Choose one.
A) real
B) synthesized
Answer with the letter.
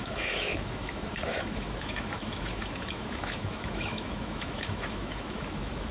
B